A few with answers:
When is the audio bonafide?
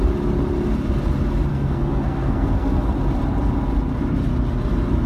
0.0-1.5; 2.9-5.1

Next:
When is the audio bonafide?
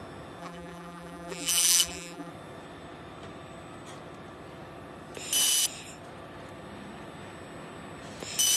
0.0-0.4; 2.3-8.6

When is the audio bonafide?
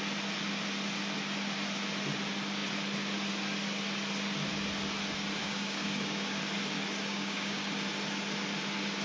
0.0-5.4; 6.4-7.1; 7.7-9.0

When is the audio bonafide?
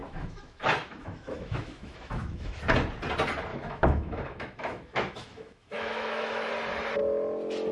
2.6-3.5; 6.5-7.7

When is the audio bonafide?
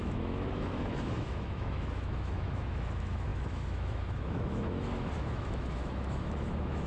none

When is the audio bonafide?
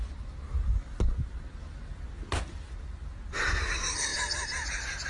0.0-5.1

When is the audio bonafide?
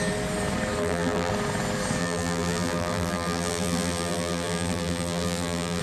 0.0-0.8; 1.3-2.0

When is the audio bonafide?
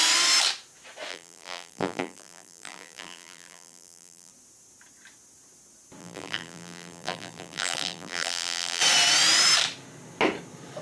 0.0-1.1; 4.3-6.0; 8.8-10.8